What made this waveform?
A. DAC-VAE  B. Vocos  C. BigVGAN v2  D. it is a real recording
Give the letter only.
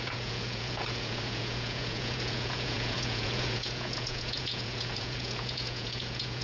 B